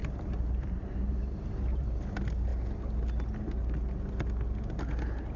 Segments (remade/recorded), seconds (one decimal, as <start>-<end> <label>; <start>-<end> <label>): 0.0-2.0 remade; 2.0-5.4 recorded